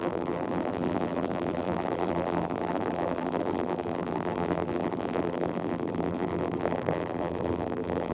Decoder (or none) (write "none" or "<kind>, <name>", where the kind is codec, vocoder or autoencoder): vocoder, BigVGAN v2